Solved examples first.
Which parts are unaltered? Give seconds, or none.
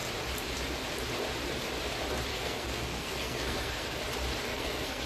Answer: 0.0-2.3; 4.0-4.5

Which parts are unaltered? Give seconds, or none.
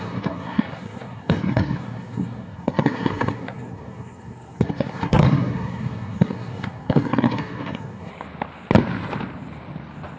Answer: 8.1-10.2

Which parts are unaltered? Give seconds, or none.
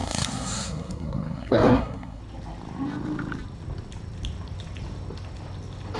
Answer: 2.2-6.0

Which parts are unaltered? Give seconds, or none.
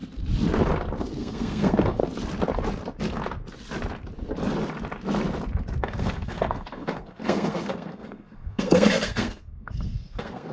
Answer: 0.0-1.2; 2.0-5.8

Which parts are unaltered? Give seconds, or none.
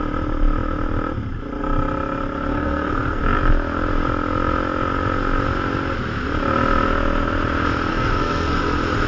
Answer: 0.0-2.5; 3.2-7.9; 8.6-9.1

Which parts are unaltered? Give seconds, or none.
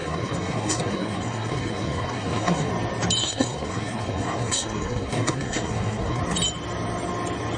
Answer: 2.7-3.2; 6.2-7.6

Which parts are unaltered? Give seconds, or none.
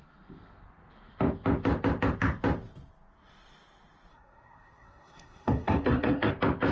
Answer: 0.0-4.1; 6.3-6.7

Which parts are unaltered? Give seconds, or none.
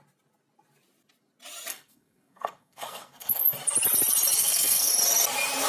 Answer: 0.0-1.7; 3.4-4.4; 4.9-5.7